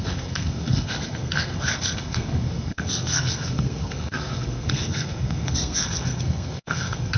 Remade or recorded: remade